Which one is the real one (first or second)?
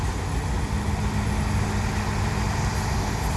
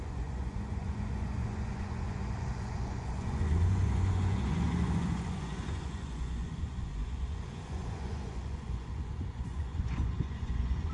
first